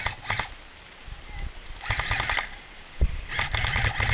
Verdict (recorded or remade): recorded